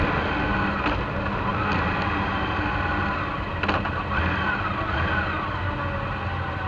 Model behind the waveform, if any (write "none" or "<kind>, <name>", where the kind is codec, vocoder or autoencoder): none